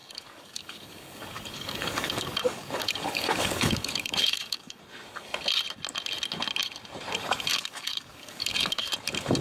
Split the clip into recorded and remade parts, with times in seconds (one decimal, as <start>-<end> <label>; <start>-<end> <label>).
0.0-4.8 remade; 4.8-7.5 recorded; 7.5-8.9 remade; 8.9-9.4 recorded